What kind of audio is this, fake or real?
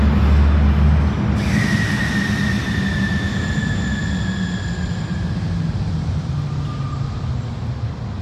real